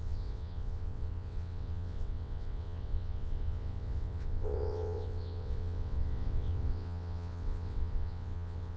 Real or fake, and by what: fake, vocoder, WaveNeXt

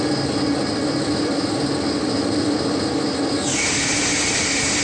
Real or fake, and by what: real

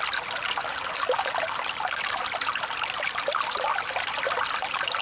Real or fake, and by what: real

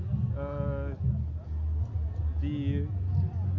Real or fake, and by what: real